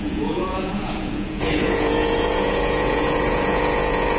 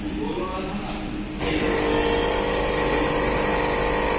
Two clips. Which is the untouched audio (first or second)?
second